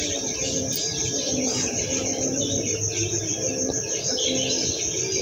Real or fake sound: real